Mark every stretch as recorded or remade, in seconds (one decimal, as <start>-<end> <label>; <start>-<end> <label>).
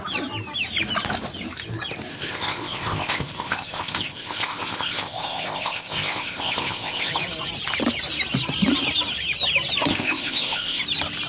0.0-2.1 recorded; 2.1-7.1 remade; 7.1-9.9 recorded; 9.9-10.8 remade; 10.8-11.3 recorded